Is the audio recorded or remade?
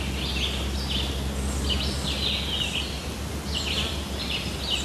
recorded